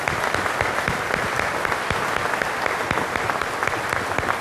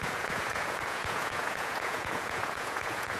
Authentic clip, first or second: first